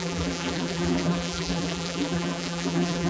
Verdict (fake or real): fake